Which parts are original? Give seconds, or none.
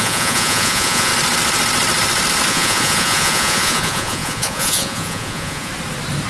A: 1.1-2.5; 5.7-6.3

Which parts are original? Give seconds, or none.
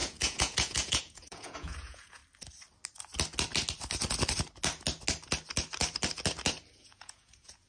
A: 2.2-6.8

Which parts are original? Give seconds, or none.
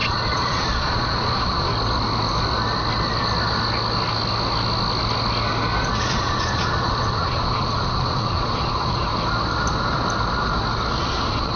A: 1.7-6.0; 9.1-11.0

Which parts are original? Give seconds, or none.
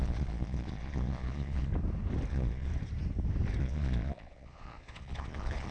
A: 1.7-2.3; 2.7-3.6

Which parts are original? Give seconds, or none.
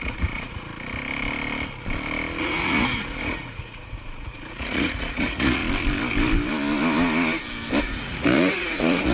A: 0.7-2.4; 5.6-7.8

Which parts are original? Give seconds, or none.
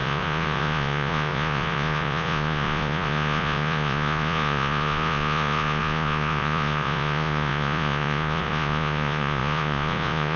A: none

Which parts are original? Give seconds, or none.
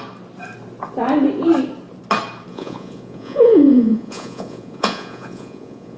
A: 0.0-2.5